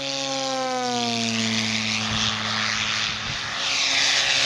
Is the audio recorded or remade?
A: recorded